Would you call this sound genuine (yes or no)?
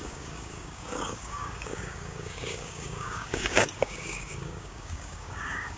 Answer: no